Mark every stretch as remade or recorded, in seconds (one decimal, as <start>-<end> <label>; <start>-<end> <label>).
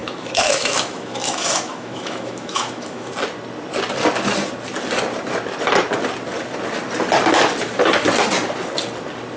0.0-3.1 remade; 3.1-9.4 recorded